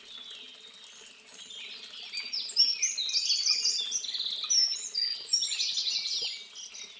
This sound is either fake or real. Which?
real